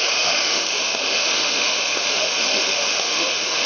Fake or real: fake